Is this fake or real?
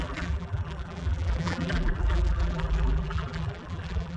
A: fake